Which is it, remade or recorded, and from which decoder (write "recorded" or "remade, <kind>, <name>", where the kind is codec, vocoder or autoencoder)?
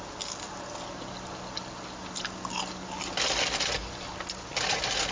recorded